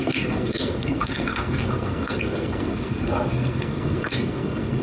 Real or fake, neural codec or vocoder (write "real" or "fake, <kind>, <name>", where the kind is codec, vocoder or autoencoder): fake, codec, SNAC